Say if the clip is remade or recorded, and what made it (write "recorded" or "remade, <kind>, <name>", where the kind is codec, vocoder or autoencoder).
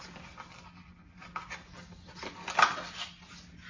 recorded